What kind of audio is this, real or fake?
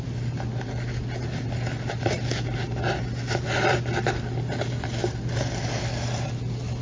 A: real